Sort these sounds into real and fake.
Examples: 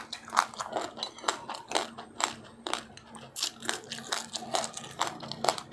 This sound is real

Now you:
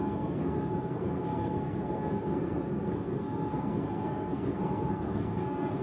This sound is fake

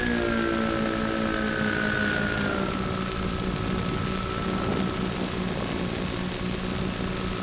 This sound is real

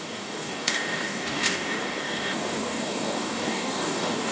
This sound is fake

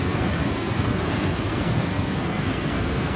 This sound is fake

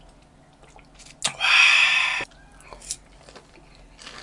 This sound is real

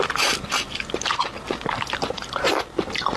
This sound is fake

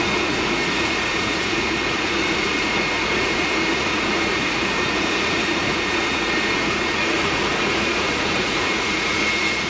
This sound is fake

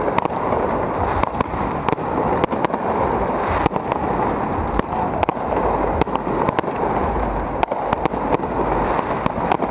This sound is real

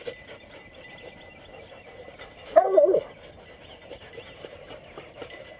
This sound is real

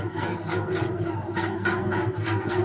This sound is fake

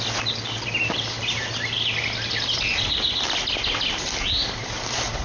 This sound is real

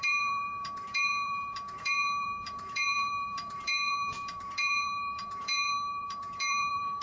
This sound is fake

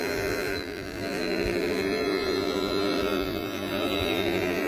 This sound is fake